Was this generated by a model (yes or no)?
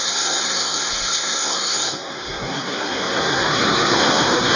yes